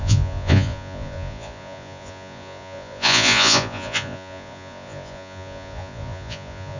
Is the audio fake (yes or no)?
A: yes